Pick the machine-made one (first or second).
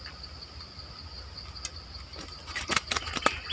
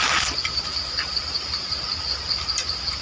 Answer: second